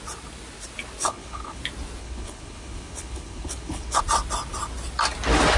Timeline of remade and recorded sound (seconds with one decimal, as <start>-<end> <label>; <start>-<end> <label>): 0.0-1.0 recorded; 1.0-1.6 remade; 1.6-2.0 recorded; 2.0-4.0 remade; 4.0-5.6 recorded